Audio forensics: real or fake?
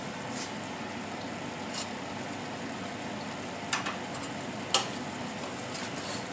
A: real